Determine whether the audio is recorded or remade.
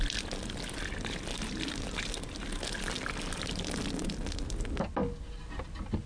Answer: recorded